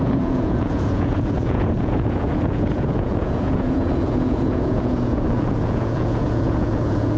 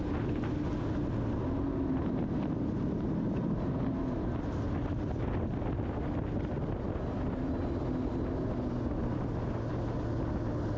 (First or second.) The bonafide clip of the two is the second